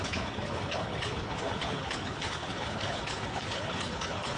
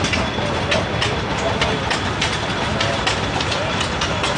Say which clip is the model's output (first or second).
first